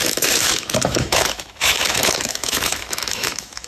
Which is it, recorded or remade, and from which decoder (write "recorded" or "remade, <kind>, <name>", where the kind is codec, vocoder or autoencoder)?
remade, autoencoder, DAC-VAE